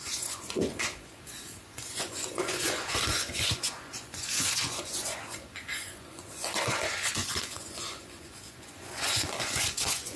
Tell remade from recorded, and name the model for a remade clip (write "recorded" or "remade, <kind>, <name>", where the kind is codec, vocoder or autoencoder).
remade, vocoder, Vocos